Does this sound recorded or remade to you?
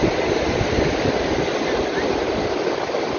recorded